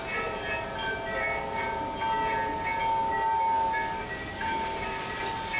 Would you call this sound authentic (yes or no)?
yes